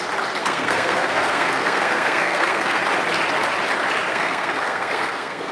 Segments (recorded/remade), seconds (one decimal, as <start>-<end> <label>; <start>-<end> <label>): 0.0-0.4 recorded; 0.4-2.8 remade; 2.8-4.1 recorded; 4.1-5.5 remade